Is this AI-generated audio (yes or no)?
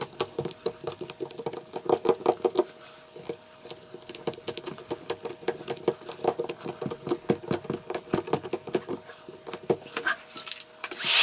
no